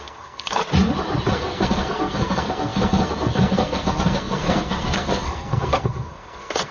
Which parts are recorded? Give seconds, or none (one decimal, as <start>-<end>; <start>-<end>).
0.6-1.3